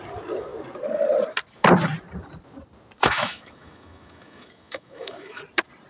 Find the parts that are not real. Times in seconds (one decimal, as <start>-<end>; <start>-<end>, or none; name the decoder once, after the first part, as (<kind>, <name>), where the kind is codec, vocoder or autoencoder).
3.0-5.4 (autoencoder, DAC-VAE)